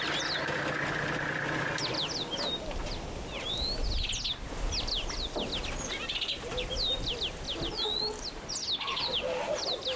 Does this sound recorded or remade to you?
recorded